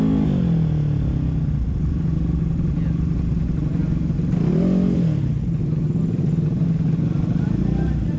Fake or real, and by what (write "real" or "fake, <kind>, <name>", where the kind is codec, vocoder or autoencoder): real